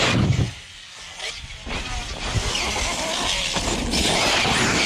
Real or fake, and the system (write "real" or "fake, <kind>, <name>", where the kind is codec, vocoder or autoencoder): real